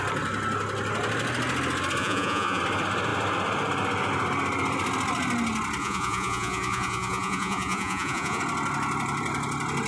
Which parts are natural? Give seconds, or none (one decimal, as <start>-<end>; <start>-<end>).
0.0-2.0; 2.6-5.8; 8.4-9.9